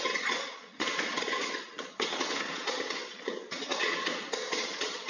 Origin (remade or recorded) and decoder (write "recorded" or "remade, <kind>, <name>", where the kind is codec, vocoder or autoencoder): remade, vocoder, Vocos